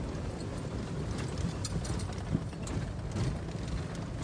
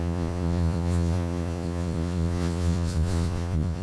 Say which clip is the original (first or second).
first